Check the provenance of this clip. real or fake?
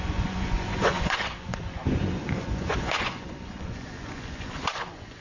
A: fake